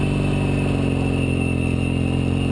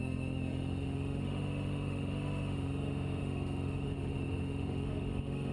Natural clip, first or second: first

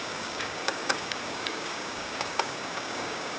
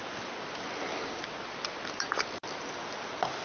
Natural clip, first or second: second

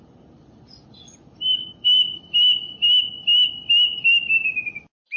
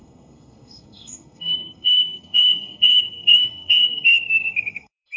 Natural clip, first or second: first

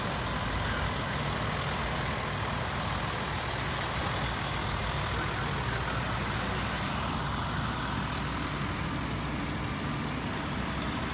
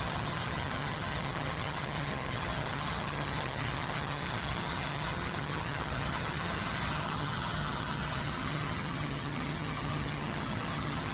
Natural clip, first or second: first